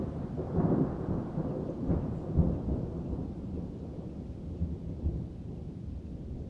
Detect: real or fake real